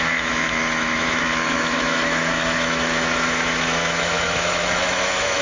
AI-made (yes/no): yes